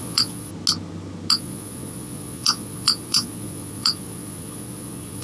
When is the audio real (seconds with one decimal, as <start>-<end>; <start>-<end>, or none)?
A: 0.5-1.3